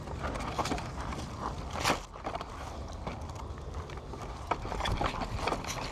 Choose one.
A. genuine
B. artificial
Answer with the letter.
A